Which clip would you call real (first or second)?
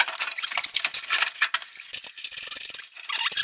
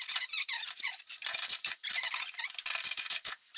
first